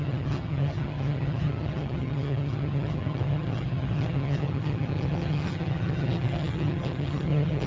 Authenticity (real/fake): fake